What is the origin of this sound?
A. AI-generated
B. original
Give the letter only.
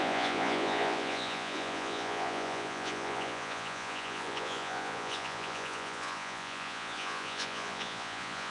A